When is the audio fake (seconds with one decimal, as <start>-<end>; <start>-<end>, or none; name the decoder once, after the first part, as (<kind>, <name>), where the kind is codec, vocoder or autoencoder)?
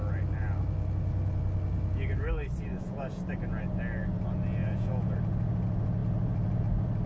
2.7-3.2 (vocoder, Vocos); 4.6-5.1